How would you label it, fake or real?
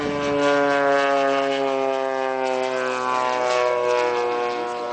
real